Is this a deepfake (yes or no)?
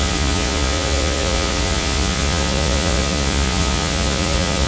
yes